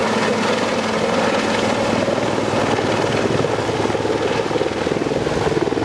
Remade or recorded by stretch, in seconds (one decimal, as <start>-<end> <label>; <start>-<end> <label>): 0.0-5.8 recorded